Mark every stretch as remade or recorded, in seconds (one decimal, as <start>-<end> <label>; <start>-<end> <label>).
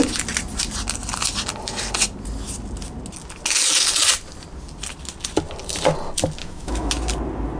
0.0-6.4 recorded; 6.4-6.9 remade; 6.9-7.6 recorded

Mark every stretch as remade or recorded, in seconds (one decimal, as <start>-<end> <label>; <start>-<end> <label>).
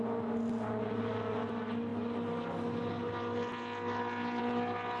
0.0-5.0 recorded